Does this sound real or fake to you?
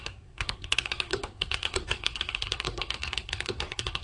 fake